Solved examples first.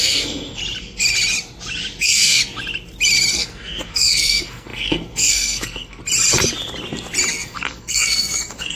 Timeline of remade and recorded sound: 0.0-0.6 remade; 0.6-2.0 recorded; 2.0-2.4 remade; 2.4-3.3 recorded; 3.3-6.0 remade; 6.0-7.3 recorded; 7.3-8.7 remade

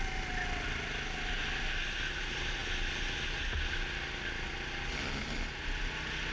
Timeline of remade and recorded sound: 0.0-6.3 recorded

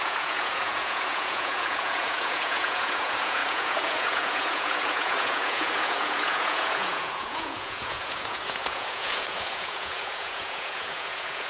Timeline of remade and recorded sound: 0.0-11.5 remade